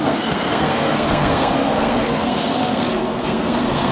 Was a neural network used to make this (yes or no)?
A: yes